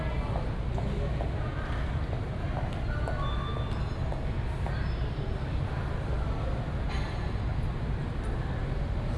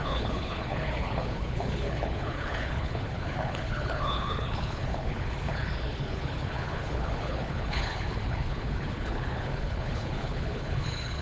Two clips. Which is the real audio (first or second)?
first